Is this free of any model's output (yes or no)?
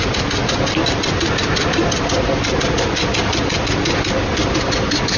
yes